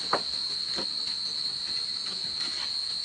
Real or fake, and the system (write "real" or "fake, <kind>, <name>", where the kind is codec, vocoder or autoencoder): real